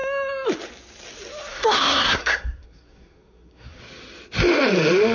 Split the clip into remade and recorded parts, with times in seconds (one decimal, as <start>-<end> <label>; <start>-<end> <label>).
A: 0.0-1.5 recorded; 1.5-3.8 remade; 3.8-5.1 recorded